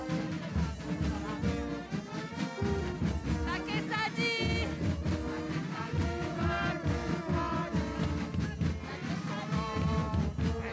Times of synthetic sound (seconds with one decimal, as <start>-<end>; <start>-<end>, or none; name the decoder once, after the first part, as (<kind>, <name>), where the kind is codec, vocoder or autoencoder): none